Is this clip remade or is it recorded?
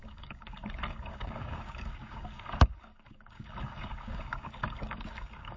remade